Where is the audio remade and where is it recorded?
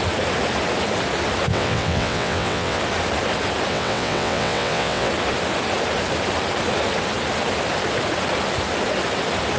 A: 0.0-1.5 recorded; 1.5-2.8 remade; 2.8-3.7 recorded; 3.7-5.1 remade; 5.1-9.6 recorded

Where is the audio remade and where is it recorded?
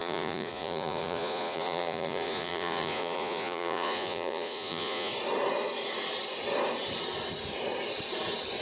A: 0.0-5.1 remade; 5.1-8.6 recorded